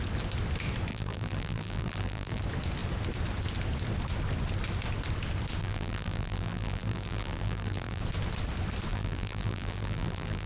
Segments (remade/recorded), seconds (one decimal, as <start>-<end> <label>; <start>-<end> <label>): 0.0-0.9 recorded; 0.9-2.4 remade; 2.4-5.6 recorded; 5.6-8.0 remade; 8.0-8.9 recorded; 8.9-10.5 remade